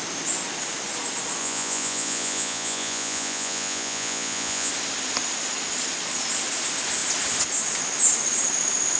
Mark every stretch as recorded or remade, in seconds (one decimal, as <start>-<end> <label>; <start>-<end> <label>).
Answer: 0.0-1.4 recorded; 1.4-4.7 remade; 4.7-9.0 recorded